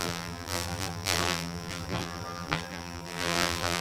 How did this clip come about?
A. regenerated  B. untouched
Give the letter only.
A